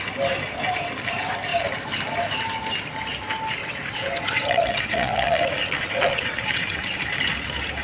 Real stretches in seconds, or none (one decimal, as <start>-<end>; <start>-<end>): 0.0-3.6; 7.0-7.8